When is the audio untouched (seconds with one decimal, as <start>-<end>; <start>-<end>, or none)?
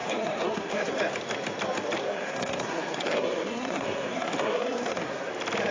0.9-2.0; 5.3-5.7